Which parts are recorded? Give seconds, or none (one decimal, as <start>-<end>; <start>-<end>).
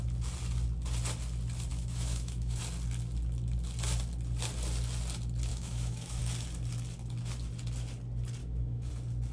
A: 0.0-1.7; 2.6-5.5; 6.2-8.4; 8.9-9.3